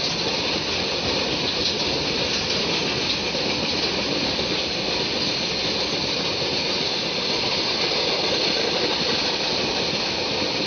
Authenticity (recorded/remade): recorded